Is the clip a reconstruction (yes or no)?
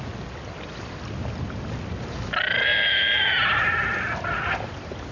no